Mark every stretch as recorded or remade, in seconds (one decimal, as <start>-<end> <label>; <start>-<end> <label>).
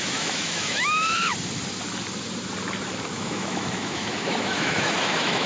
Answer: 0.0-1.3 remade; 1.3-3.1 recorded; 3.1-5.5 remade